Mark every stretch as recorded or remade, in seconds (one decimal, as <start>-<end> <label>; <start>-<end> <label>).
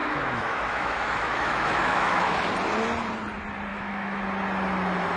0.0-2.3 remade; 2.3-3.7 recorded; 3.7-4.2 remade; 4.2-5.2 recorded